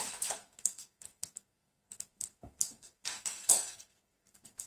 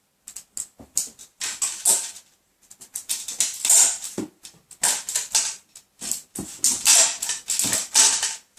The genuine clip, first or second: second